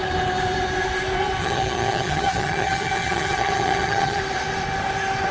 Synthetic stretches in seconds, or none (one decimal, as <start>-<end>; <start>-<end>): 1.4-4.2